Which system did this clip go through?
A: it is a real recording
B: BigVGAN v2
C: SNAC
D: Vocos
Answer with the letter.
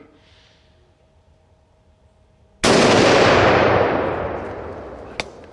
A